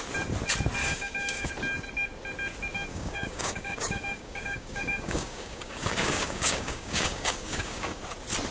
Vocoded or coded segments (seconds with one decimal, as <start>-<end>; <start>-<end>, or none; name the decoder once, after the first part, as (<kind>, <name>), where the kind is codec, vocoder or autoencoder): 0.8-1.5 (codec, DAC); 2.9-8.0